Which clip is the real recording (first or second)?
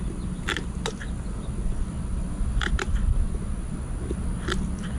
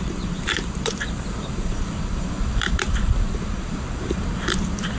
first